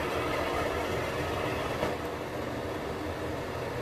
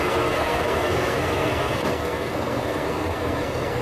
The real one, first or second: first